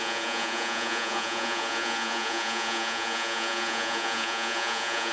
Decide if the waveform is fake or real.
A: fake